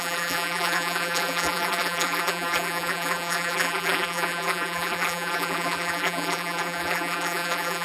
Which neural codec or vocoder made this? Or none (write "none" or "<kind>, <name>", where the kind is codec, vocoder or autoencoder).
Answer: vocoder, BigVGAN v2